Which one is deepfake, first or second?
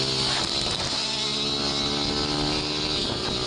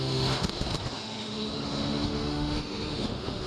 second